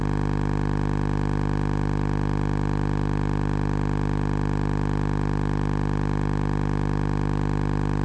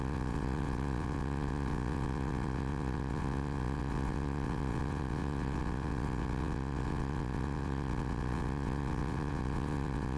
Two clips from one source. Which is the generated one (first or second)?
second